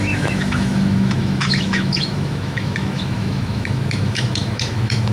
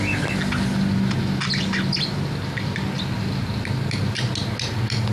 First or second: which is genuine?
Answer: second